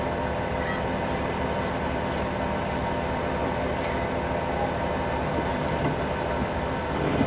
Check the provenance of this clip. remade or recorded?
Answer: recorded